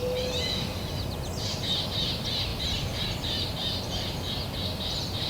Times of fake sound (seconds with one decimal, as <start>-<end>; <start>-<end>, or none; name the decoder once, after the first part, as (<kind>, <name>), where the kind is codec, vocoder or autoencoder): none